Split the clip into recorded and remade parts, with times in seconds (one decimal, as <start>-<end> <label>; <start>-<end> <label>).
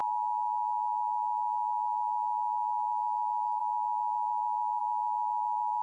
0.0-5.8 recorded